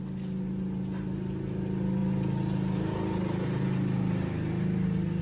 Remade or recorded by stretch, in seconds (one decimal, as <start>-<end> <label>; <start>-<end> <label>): 0.0-5.2 recorded